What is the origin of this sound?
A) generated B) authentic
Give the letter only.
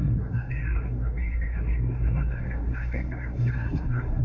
A